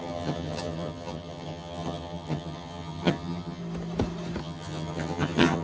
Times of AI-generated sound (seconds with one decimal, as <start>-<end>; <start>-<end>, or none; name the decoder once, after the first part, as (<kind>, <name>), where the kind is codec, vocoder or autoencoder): 0.0-3.6 (vocoder, HiFi-GAN); 4.4-5.6